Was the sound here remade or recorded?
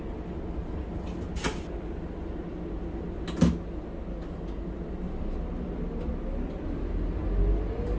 recorded